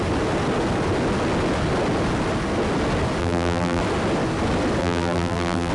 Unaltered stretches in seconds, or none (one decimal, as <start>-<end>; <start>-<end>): 0.0-3.2; 3.8-4.8